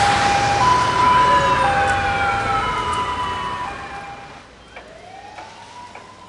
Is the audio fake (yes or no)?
no